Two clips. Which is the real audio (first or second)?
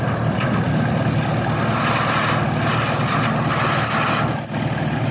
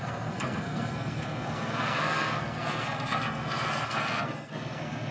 first